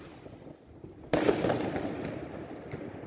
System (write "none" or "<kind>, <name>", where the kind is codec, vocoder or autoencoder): none